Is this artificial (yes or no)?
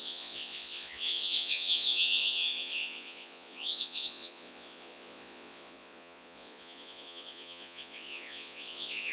yes